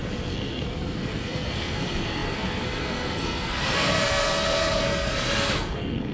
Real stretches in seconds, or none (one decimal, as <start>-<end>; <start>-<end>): none